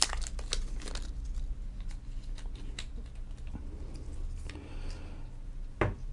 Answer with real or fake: real